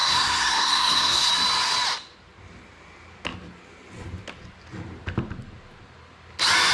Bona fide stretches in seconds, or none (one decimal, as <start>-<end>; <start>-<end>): 1.3-6.7